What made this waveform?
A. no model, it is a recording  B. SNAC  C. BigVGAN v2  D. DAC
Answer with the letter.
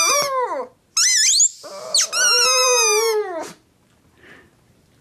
A